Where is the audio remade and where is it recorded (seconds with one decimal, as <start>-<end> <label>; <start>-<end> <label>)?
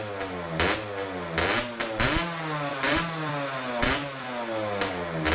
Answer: 0.0-2.7 recorded; 2.7-3.3 remade; 3.3-4.0 recorded; 4.0-5.3 remade